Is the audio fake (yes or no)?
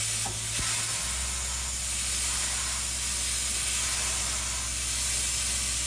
no